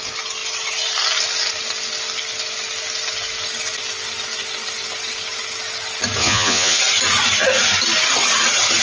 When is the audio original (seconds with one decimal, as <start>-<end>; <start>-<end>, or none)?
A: 0.0-6.2; 6.8-8.8